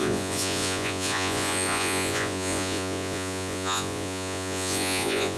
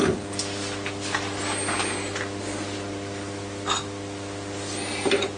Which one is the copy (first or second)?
first